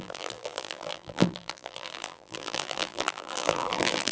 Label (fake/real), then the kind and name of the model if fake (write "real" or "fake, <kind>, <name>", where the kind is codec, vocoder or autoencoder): fake, vocoder, BigVGAN v2